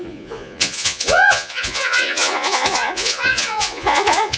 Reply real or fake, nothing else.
fake